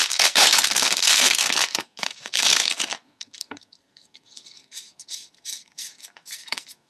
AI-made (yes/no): yes